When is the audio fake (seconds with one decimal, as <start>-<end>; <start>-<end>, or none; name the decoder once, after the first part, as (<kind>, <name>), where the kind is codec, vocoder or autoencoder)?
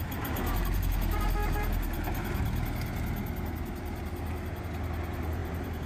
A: none